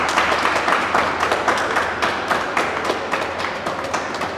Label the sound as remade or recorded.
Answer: recorded